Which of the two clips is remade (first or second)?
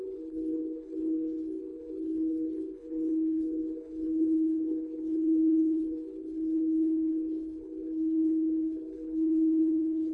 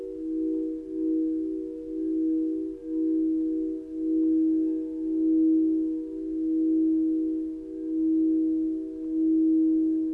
first